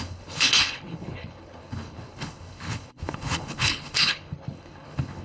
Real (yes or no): no